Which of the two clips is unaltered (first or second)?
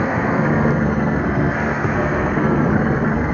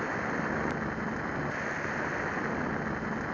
second